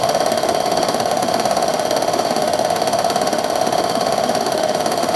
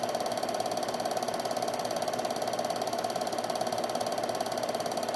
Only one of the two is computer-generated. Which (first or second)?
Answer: first